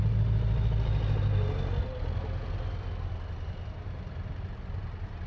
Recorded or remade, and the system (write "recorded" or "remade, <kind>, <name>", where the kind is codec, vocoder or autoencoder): recorded